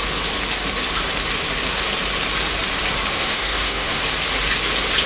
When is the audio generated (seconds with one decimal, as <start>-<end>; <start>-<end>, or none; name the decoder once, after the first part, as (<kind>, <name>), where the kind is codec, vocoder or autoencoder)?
3.1-4.0 (codec, SNAC)

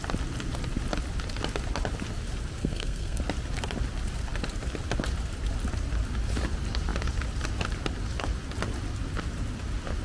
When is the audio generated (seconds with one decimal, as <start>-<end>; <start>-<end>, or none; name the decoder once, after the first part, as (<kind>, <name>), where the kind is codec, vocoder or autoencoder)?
2.6-3.2 (codec, SNAC)

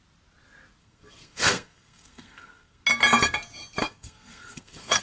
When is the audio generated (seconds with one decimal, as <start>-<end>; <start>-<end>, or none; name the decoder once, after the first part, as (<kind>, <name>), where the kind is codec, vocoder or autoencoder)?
0.8-2.8 (codec, SNAC); 3.8-5.0

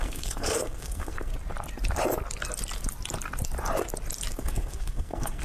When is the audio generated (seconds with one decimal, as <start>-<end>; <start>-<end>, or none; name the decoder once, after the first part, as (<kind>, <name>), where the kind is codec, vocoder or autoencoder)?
0.0-1.3 (codec, SNAC); 4.3-5.4